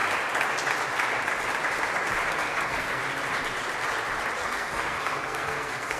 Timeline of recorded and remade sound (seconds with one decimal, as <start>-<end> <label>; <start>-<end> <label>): 0.0-2.3 recorded; 2.3-3.0 remade; 3.0-4.4 recorded; 4.4-6.0 remade